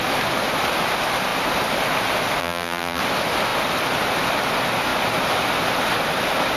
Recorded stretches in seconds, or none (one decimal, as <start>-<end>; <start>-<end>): 0.0-2.4; 3.0-6.6